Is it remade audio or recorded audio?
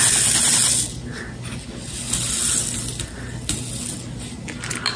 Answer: recorded